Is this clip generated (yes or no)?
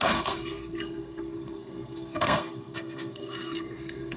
yes